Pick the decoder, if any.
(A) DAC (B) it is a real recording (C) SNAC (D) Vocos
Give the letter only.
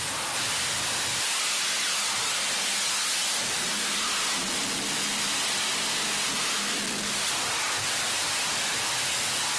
B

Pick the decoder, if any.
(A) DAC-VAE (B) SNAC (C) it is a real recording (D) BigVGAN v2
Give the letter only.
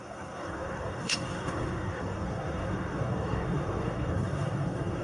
B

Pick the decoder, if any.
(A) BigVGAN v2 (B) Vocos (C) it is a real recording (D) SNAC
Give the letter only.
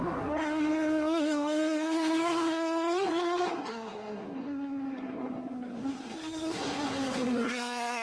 D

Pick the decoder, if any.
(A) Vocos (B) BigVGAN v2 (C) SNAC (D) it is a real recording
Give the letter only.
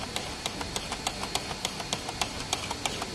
D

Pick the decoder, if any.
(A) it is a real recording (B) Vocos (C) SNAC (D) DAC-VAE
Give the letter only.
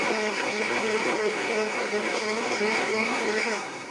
C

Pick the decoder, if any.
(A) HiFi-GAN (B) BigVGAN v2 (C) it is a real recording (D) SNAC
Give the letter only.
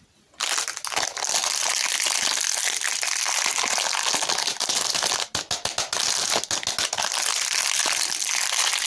C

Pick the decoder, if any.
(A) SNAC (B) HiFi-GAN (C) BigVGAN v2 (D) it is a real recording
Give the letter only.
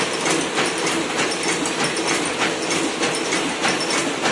D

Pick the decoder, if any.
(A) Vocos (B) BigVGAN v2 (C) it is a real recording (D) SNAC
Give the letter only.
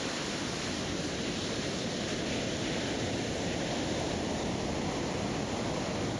C